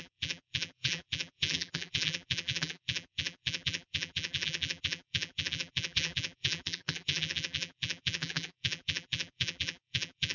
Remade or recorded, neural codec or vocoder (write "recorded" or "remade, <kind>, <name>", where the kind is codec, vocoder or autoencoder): remade, vocoder, BigVGAN v2